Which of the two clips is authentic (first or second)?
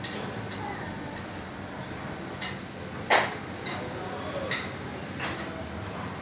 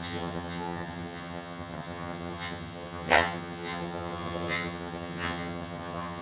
first